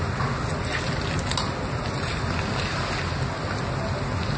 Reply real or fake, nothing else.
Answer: real